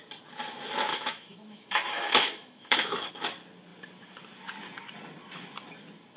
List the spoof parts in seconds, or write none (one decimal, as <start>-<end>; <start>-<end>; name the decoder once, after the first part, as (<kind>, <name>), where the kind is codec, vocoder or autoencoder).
0.9-3.1 (autoencoder, DAC-VAE)